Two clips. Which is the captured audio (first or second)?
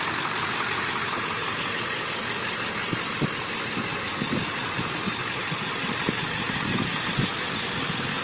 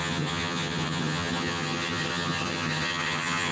first